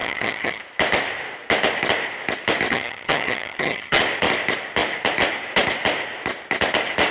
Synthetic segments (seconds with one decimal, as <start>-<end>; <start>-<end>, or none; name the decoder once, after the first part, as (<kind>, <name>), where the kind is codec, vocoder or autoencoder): 0.0-0.6 (vocoder, HiFi-GAN); 2.7-4.0